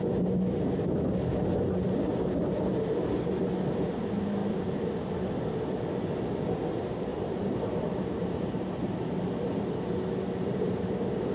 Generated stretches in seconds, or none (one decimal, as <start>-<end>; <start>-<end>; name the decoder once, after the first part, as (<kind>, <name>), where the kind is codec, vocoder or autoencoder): 4.4-5.1 (vocoder, BigVGAN v2); 7.1-8.4